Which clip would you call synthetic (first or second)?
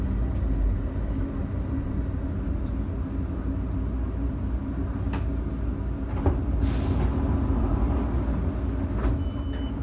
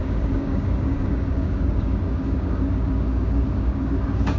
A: second